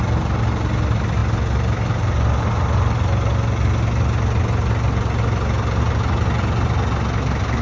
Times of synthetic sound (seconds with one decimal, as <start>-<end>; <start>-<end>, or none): none